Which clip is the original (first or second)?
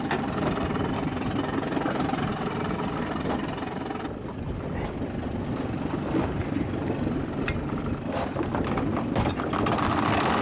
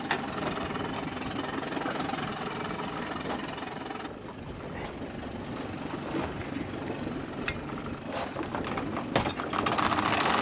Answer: second